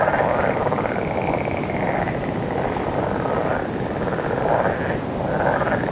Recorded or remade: recorded